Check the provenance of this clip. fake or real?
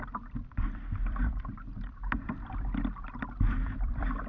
fake